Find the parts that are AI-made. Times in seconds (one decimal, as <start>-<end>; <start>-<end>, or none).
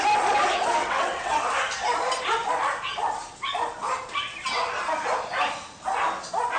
0.8-1.4